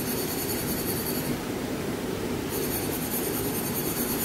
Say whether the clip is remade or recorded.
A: remade